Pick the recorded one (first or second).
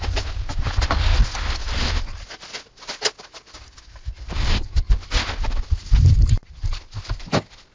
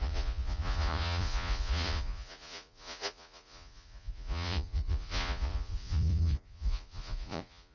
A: first